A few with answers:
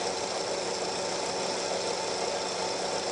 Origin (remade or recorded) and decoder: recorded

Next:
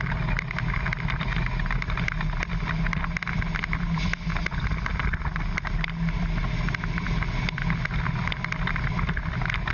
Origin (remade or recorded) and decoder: recorded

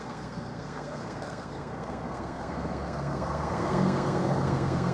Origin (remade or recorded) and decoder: remade, codec, SNAC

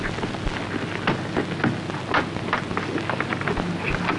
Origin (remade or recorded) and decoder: recorded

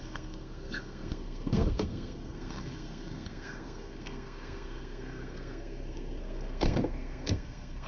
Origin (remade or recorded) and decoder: remade, codec, SNAC